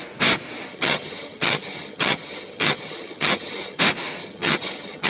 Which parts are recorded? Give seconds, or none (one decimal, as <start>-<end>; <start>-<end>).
0.0-0.7; 3.8-4.2